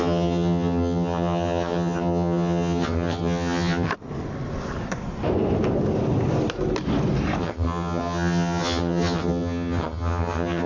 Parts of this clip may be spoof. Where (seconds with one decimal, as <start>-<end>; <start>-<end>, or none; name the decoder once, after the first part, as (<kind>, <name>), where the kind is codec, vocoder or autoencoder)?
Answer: 0.0-3.9 (vocoder, HiFi-GAN); 7.4-10.7